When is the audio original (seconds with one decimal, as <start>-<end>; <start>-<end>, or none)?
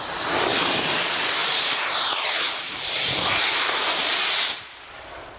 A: 0.0-1.4; 4.6-5.4